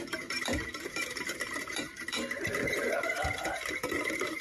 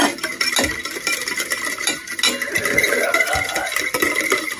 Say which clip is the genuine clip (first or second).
second